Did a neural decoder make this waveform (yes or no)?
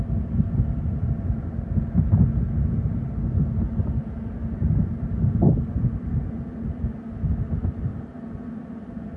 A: no